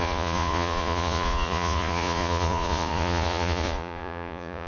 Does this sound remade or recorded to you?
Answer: remade